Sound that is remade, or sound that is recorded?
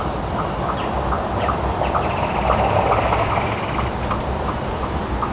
remade